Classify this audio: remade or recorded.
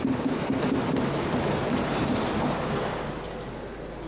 recorded